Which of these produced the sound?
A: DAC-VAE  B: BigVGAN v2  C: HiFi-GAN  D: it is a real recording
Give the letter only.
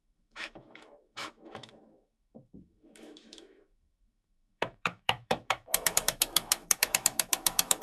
A